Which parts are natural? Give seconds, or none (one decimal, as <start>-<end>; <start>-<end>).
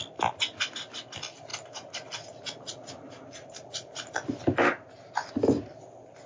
0.0-1.5; 5.3-6.3